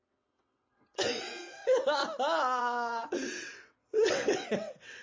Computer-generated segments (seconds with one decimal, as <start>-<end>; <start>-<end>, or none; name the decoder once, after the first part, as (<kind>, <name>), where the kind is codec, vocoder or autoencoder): 0.0-2.0 (vocoder, WaveNeXt); 2.6-5.0